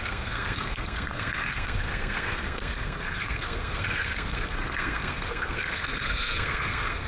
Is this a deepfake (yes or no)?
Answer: yes